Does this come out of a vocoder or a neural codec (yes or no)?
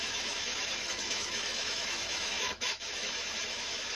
yes